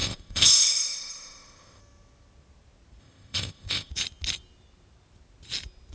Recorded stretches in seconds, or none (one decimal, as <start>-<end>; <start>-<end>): 1.8-3.0; 3.9-5.9